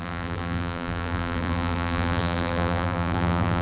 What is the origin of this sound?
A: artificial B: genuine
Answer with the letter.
A